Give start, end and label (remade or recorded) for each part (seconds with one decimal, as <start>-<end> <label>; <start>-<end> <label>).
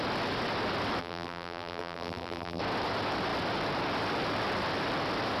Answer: 0.0-1.0 recorded; 1.0-2.6 remade; 2.6-5.4 recorded